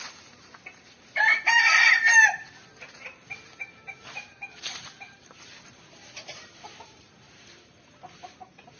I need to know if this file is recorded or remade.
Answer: remade